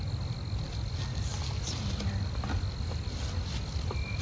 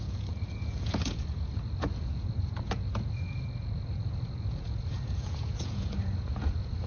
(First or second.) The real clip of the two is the first